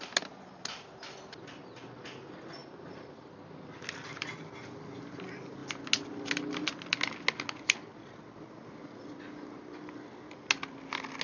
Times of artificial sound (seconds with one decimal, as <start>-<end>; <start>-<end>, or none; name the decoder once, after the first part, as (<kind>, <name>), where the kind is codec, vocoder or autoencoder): 2.6-3.3 (vocoder, BigVGAN v2)